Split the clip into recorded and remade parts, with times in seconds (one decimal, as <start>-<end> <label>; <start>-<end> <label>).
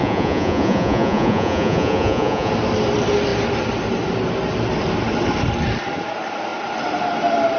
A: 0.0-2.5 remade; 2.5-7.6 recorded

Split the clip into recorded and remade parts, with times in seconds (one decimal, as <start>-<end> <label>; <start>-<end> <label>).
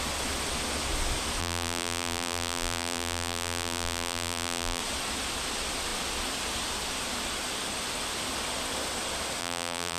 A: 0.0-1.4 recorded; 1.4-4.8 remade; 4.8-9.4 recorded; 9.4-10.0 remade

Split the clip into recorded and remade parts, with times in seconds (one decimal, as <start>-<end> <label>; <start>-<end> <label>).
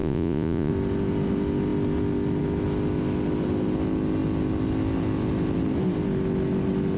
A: 0.0-0.7 remade; 0.7-7.0 recorded